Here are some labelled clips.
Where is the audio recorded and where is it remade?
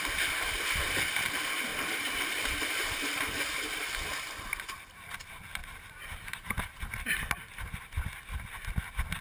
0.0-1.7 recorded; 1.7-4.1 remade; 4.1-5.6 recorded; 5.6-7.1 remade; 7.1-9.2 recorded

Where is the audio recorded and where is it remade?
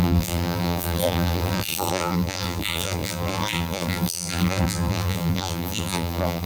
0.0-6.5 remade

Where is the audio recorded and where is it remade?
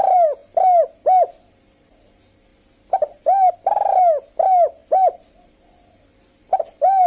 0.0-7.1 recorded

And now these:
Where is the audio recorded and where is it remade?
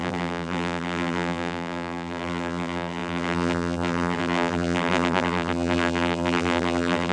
0.0-7.1 remade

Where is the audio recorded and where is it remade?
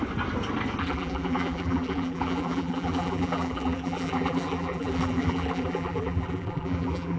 0.0-0.8 recorded; 0.8-7.2 remade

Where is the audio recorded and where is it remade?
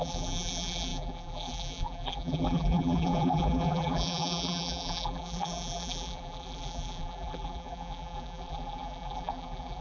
0.0-9.8 remade